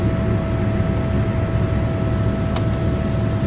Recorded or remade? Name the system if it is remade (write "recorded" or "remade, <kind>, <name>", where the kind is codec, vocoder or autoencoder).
recorded